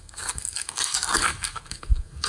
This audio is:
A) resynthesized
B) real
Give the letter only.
A